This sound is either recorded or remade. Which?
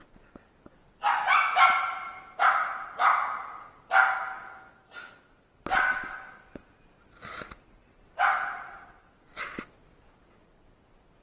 recorded